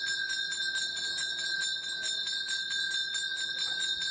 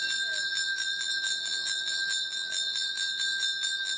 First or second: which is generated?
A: second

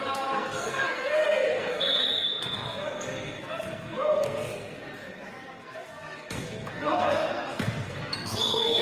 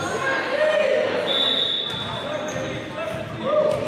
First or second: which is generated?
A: first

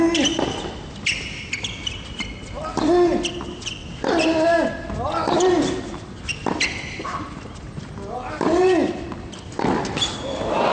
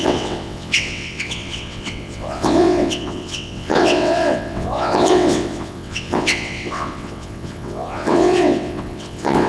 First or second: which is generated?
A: second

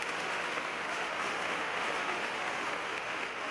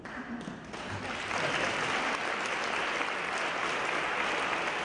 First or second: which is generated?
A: first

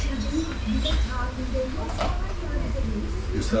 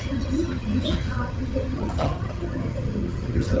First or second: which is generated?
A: second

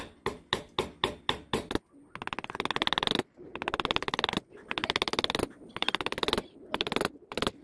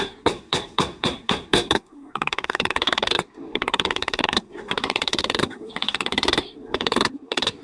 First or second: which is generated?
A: second